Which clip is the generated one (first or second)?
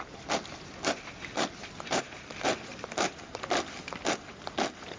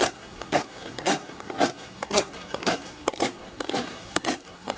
second